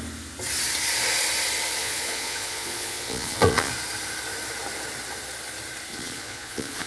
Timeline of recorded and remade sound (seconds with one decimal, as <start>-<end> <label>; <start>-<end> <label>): 0.0-1.8 recorded; 1.8-3.7 remade; 3.7-5.9 recorded; 5.9-6.9 remade